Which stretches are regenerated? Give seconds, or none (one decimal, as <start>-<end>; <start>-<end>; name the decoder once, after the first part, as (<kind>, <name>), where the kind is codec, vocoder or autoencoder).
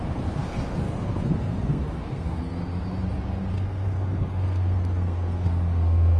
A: 0.0-2.6 (codec, SNAC); 3.5-6.2